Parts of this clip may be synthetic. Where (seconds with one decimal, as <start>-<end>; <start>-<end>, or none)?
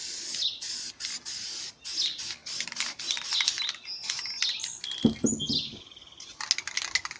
none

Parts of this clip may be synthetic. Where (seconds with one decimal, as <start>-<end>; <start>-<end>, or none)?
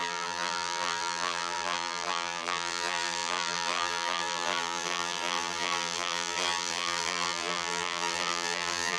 0.0-9.0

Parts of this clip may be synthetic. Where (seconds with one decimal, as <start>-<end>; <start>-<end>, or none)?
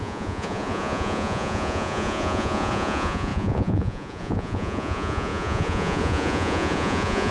0.0-7.3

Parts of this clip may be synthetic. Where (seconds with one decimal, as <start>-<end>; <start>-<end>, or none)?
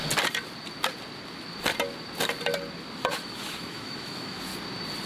3.1-4.5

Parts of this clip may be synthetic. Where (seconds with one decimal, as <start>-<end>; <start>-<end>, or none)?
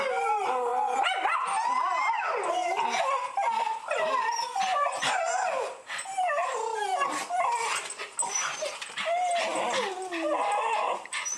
4.5-5.2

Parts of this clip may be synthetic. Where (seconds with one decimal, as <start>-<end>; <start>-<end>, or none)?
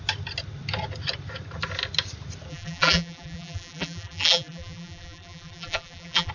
2.5-6.3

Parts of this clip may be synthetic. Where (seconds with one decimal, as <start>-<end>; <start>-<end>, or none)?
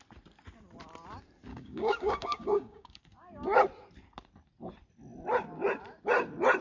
1.5-3.0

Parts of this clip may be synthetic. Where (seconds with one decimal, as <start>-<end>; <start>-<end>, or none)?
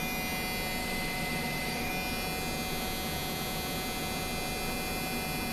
0.8-1.9